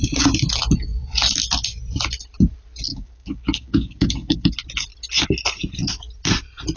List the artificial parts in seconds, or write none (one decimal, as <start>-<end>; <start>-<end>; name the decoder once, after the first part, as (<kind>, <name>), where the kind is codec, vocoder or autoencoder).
2.9-4.5 (codec, DAC)